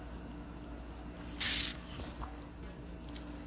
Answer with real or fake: real